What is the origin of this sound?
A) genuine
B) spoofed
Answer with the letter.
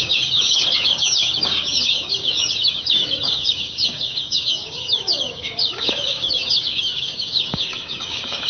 B